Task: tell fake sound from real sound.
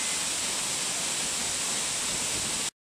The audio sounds real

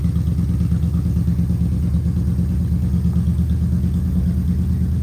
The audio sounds real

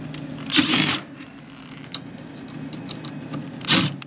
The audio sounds real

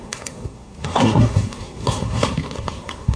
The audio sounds fake